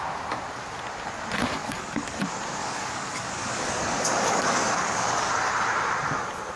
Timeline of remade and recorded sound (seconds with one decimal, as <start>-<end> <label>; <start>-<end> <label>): 0.0-1.6 recorded; 1.6-2.2 remade; 2.2-2.6 recorded; 2.6-5.3 remade; 5.3-6.6 recorded